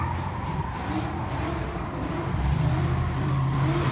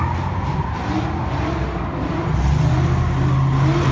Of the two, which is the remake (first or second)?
first